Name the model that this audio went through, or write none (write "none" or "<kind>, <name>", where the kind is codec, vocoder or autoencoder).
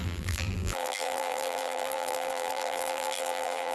vocoder, BigVGAN v2